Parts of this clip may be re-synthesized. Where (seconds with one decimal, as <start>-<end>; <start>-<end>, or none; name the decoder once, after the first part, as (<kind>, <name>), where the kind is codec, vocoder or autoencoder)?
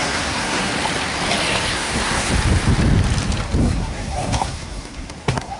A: 0.0-0.7 (codec, SNAC); 1.7-2.3; 3.6-5.6